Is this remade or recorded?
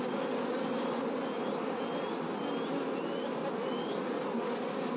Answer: recorded